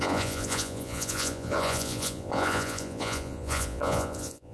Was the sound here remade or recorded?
remade